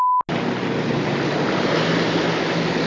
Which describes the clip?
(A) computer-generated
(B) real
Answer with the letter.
B